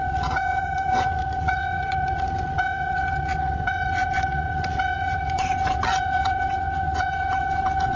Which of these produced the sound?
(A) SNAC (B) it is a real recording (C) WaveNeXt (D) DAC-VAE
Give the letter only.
C